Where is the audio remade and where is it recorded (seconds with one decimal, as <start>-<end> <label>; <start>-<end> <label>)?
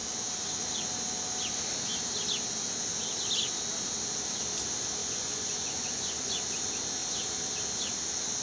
0.0-5.0 recorded; 5.0-6.4 remade; 6.4-8.4 recorded